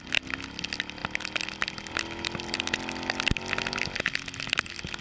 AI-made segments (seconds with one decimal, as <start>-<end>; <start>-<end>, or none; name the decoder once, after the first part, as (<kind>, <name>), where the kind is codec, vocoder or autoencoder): none